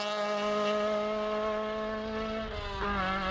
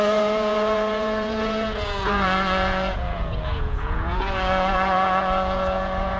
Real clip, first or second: first